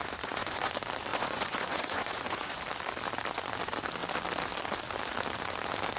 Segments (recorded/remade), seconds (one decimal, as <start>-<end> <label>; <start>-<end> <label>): 0.0-0.7 remade; 0.7-1.1 recorded; 1.1-2.6 remade; 2.6-6.0 recorded